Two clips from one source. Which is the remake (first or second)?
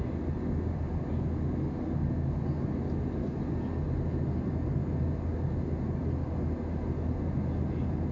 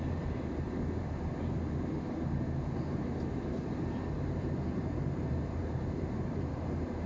second